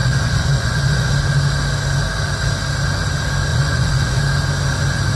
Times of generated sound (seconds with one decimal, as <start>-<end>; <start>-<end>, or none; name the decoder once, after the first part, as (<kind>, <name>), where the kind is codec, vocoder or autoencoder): 0.0-1.1 (vocoder, Vocos); 3.5-4.2